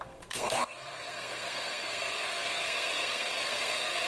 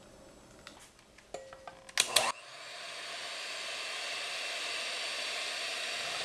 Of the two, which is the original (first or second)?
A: second